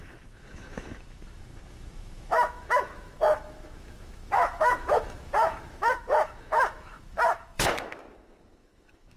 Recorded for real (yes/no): no